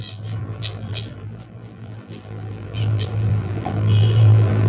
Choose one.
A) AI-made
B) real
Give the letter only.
A